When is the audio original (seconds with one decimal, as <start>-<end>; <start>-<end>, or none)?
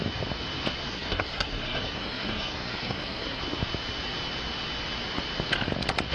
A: 0.0-0.9; 3.4-6.1